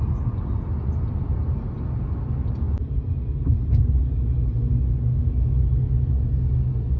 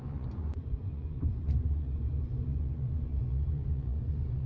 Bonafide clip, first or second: first